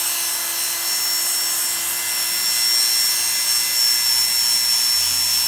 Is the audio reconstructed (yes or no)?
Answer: no